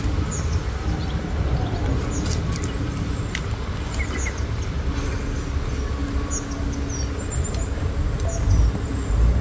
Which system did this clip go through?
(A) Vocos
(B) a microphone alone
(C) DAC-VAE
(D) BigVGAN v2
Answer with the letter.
B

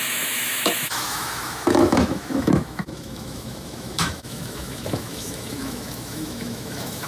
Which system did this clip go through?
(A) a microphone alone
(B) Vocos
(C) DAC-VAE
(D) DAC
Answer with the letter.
C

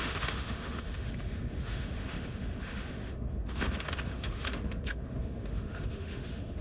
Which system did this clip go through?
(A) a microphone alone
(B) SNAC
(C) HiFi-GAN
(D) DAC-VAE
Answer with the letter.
D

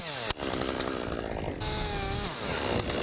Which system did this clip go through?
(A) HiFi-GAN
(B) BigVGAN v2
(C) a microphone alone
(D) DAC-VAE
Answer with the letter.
C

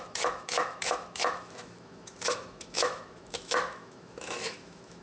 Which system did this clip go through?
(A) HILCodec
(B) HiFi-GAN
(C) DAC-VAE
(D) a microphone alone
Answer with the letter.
C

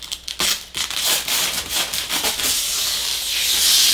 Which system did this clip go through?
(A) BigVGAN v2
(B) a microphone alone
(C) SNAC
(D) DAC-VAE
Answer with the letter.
B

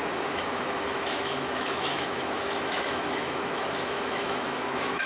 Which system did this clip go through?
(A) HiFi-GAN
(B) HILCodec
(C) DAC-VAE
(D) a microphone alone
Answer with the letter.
C